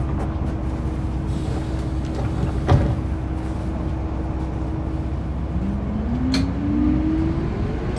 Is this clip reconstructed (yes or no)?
no